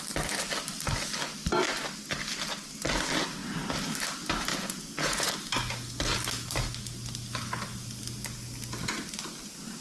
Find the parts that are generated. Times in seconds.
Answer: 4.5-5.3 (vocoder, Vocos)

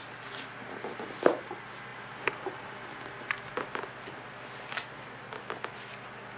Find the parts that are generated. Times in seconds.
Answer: none

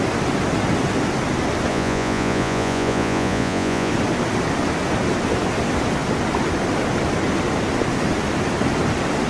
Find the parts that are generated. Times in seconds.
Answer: 1.7-3.9 (vocoder, Vocos)

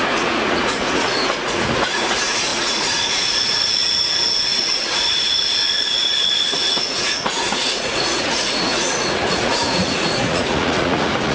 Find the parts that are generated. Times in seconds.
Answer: 0.0-11.3 (vocoder, Vocos)

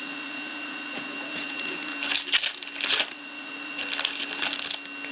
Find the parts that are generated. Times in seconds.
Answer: 0.0-1.9 (vocoder, Vocos); 3.1-3.8